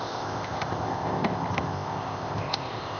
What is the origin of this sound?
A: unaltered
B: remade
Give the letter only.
B